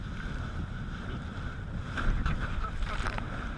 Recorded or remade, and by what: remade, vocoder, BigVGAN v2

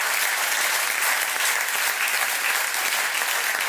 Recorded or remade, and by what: recorded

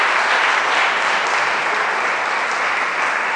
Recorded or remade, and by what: recorded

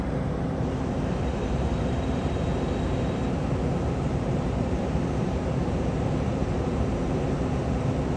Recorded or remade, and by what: remade, vocoder, BigVGAN v2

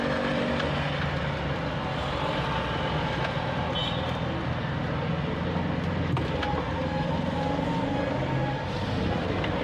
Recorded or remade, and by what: recorded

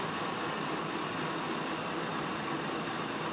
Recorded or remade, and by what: remade, vocoder, BigVGAN v2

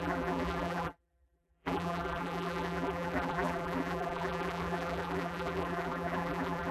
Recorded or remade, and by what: remade, vocoder, BigVGAN v2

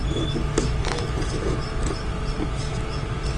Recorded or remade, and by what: recorded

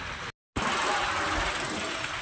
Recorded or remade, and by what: recorded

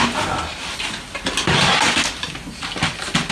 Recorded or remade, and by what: recorded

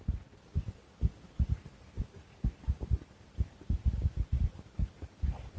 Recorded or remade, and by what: recorded